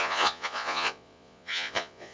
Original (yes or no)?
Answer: no